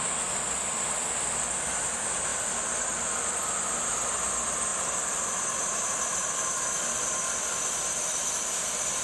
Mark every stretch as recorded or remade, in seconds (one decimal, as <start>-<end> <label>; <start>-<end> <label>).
0.0-2.3 recorded; 2.3-3.4 remade; 3.4-9.0 recorded